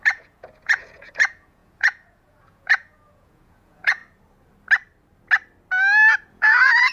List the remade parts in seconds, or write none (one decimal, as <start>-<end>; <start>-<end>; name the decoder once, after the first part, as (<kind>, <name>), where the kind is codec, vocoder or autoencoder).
0.0-4.0 (vocoder, Vocos); 6.3-6.9